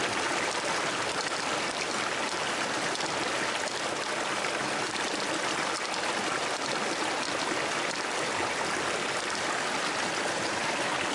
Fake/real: real